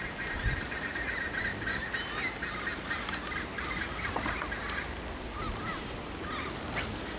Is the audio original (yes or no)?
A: yes